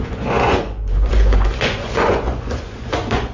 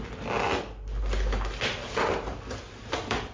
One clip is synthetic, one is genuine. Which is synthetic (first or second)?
first